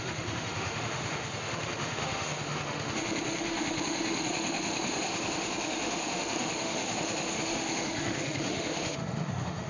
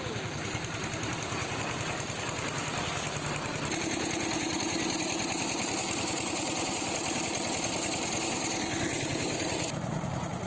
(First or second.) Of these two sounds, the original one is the second